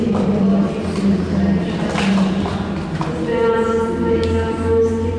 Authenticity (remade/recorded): recorded